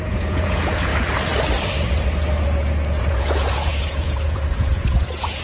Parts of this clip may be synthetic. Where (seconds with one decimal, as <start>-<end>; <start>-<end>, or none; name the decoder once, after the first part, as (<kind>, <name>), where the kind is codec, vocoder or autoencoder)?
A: 0.0-0.9 (vocoder, Vocos); 3.0-5.4